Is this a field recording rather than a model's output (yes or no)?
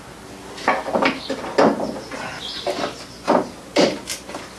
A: yes